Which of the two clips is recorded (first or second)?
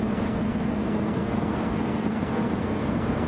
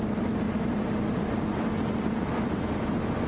second